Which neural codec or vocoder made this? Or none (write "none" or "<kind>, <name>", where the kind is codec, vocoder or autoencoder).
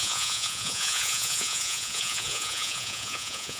vocoder, Vocos